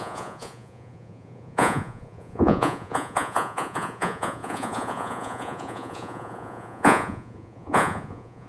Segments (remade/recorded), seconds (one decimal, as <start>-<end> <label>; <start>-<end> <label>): 0.0-8.5 remade